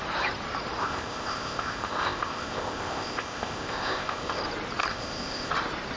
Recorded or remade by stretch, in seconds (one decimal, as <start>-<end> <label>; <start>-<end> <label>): 0.0-0.8 recorded; 0.8-4.4 remade; 4.4-4.9 recorded; 4.9-5.5 remade; 5.5-6.0 recorded